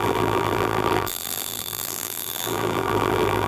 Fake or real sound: fake